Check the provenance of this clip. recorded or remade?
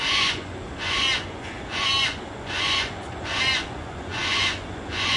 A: remade